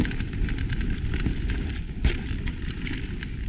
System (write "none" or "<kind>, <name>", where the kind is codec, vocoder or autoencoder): none